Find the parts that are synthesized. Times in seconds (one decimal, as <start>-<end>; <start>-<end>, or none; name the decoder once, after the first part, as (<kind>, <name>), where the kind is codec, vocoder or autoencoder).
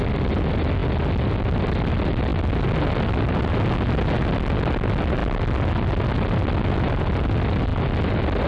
none